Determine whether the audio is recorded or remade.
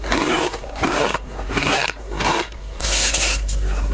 remade